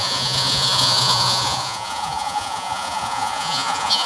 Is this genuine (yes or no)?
no